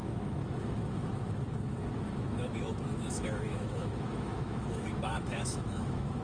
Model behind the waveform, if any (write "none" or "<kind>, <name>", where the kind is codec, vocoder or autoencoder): autoencoder, DAC-VAE